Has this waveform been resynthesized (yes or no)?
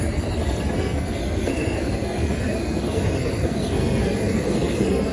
yes